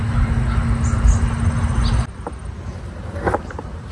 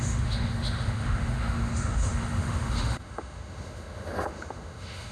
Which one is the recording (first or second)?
first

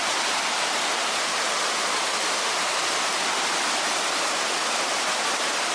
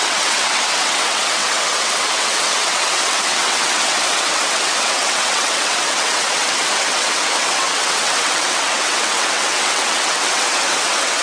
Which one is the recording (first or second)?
first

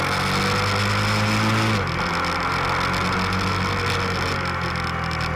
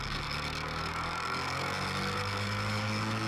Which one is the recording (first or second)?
first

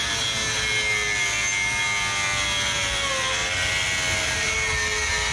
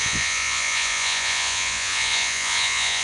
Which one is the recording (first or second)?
first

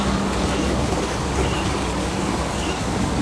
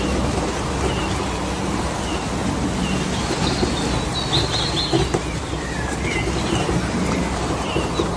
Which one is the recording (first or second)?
second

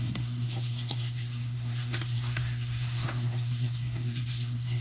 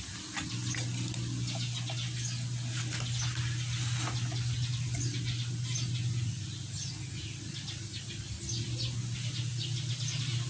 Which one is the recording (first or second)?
second